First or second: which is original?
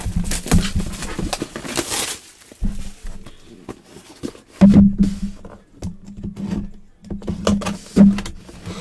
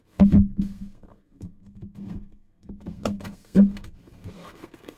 first